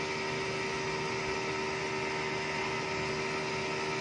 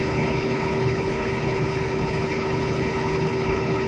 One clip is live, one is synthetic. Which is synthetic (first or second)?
second